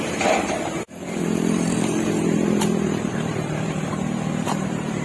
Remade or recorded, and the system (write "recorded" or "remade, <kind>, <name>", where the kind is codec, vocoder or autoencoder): remade, vocoder, BigVGAN v2